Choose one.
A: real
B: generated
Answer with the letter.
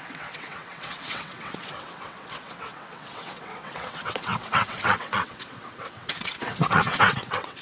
B